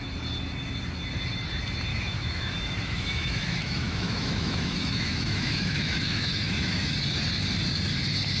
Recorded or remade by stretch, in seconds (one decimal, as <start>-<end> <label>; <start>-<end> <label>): 0.0-1.9 recorded; 1.9-6.9 remade; 6.9-8.4 recorded